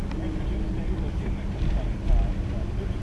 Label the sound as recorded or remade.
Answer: recorded